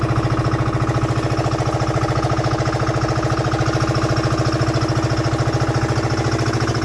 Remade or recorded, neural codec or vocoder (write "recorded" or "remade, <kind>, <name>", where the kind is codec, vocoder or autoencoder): recorded